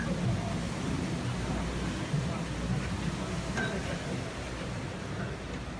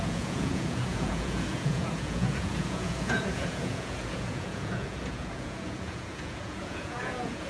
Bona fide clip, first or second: first